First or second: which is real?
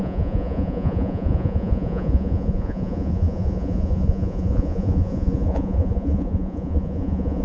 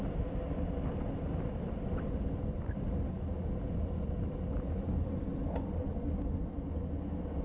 second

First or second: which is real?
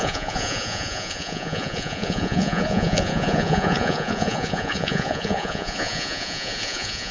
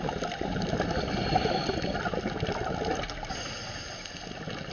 second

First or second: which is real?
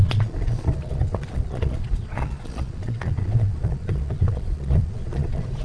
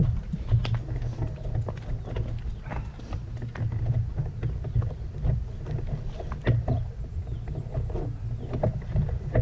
second